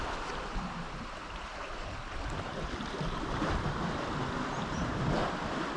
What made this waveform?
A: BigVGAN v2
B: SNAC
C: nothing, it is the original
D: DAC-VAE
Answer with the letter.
A